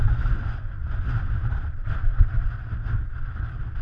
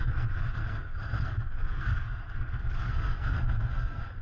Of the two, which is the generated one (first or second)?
second